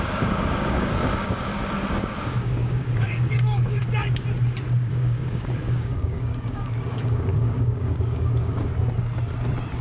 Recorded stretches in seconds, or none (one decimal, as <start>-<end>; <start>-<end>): 1.5-2.2; 3.8-4.9; 8.7-9.8